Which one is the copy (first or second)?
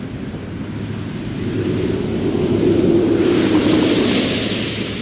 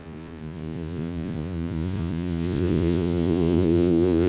second